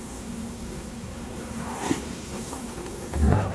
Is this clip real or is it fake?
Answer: fake